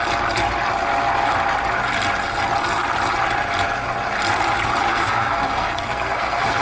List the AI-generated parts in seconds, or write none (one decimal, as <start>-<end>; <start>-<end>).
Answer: 4.9-6.6